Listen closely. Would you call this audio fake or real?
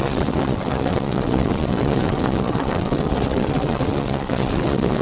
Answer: fake